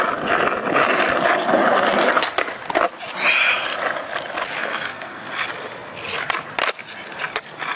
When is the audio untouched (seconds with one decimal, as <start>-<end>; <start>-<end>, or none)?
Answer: 0.0-4.6; 5.3-7.8